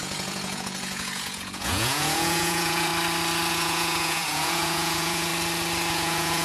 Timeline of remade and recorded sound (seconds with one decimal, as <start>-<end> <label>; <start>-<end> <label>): 0.0-2.9 remade; 2.9-3.5 recorded; 3.5-5.3 remade; 5.3-5.9 recorded; 5.9-6.4 remade